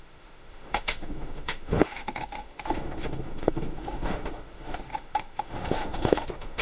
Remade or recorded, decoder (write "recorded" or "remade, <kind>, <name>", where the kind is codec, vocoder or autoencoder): remade, autoencoder, DAC-VAE